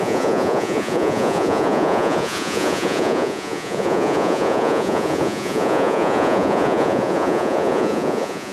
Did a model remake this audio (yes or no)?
yes